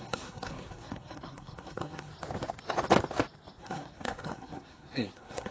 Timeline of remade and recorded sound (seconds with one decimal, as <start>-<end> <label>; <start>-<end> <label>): 0.0-2.1 remade; 2.1-3.6 recorded; 3.6-5.5 remade